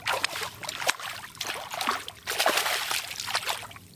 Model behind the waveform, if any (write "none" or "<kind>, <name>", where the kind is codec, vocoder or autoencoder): none